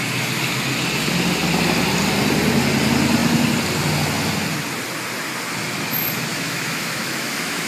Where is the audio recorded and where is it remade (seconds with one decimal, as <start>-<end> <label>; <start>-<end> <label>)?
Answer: 0.0-6.3 recorded; 6.3-7.7 remade